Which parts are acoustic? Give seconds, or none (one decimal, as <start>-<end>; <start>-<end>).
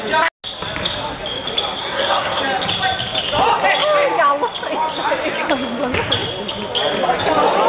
0.0-1.8; 2.4-7.7